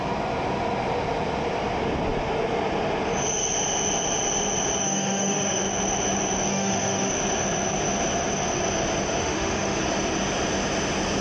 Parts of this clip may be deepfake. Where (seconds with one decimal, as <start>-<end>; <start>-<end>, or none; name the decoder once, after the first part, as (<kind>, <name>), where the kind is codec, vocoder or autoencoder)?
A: 4.8-5.6 (autoencoder, DAC-VAE); 6.5-7.1; 9.2-9.8